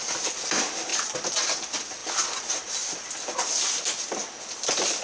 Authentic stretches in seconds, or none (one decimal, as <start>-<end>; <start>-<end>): 0.0-5.0

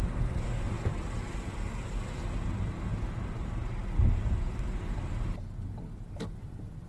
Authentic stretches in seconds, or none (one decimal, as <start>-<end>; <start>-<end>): 0.0-6.9

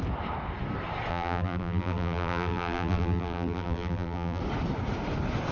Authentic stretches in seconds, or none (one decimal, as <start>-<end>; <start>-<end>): 0.0-1.1; 4.4-5.5

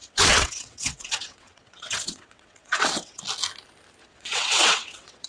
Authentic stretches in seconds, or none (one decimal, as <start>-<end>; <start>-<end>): 3.2-4.0